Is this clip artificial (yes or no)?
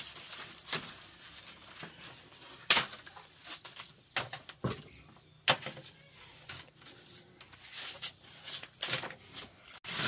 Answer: no